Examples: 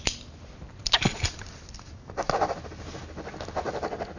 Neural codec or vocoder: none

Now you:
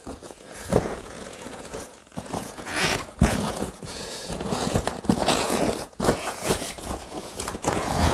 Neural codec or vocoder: vocoder, Vocos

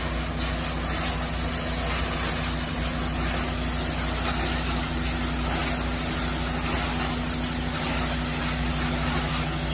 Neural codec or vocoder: none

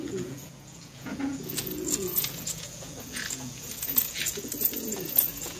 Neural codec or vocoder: vocoder, Vocos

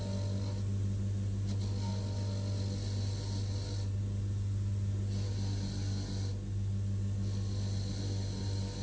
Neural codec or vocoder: none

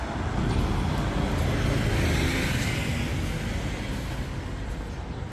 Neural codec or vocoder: none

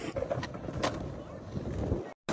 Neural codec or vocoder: none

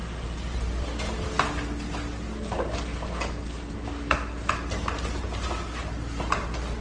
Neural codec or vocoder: none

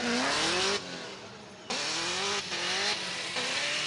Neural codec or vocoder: none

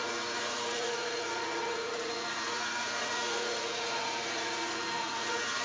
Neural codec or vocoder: vocoder, Vocos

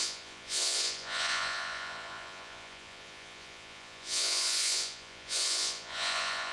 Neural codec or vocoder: vocoder, Vocos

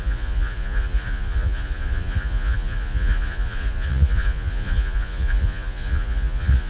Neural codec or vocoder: vocoder, Vocos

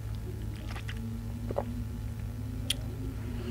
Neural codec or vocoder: none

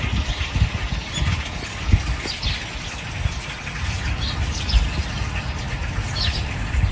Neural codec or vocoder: none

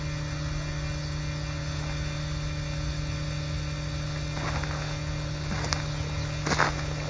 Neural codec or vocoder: none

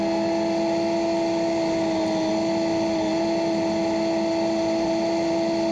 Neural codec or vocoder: none